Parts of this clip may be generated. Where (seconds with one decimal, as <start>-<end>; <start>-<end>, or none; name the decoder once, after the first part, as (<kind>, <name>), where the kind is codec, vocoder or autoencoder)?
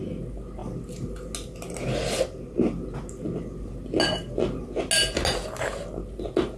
none